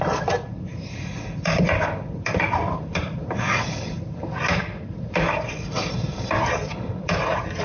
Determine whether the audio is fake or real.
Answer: fake